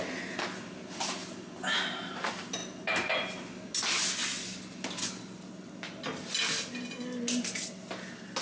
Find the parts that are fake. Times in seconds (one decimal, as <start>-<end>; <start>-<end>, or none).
none